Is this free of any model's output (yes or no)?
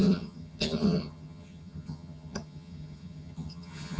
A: no